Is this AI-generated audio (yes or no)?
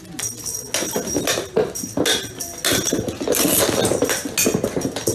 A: no